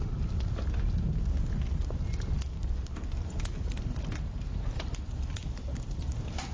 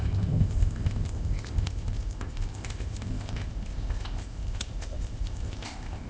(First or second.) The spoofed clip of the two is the second